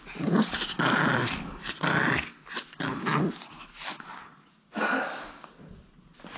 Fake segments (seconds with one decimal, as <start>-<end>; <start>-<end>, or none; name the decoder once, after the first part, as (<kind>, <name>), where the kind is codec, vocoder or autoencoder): none